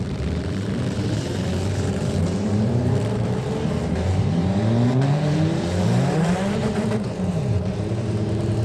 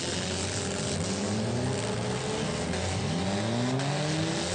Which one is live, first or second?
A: second